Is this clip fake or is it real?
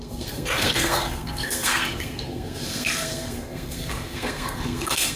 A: fake